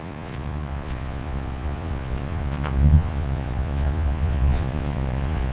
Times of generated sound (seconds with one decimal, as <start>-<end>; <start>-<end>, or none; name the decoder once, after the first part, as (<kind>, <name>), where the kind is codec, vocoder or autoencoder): 0.0-5.5 (vocoder, Vocos)